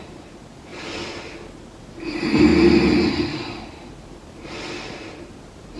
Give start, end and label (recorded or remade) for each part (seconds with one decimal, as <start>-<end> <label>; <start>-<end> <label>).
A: 0.0-0.7 remade; 0.7-1.8 recorded; 1.8-2.5 remade; 2.5-3.1 recorded; 3.1-5.8 remade